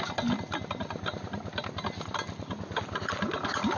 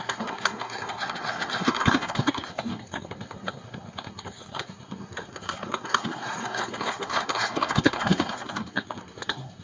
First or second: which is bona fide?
first